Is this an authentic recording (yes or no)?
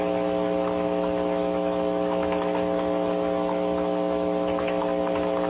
yes